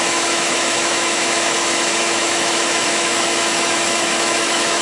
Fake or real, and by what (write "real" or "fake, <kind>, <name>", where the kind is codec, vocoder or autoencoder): fake, autoencoder, DAC-VAE